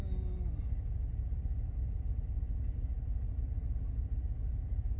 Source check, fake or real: real